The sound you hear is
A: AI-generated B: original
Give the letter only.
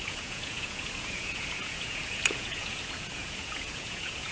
A